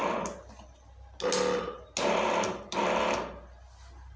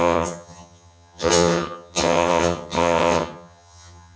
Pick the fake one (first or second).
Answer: second